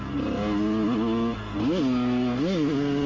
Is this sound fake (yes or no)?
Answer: no